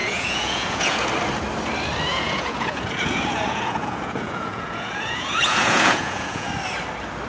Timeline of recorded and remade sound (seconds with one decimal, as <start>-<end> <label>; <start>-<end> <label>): 0.0-1.1 remade; 1.1-2.1 recorded; 2.1-6.5 remade; 6.5-7.3 recorded